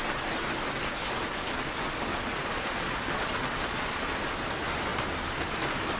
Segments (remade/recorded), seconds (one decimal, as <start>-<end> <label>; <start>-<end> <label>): 0.0-2.1 recorded; 2.1-4.0 remade; 4.0-6.0 recorded